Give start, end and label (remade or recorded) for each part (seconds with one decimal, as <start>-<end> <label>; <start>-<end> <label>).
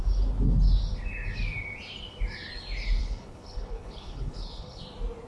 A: 0.0-3.0 recorded; 3.0-4.8 remade; 4.8-5.3 recorded